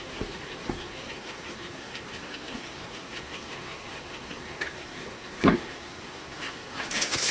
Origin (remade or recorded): remade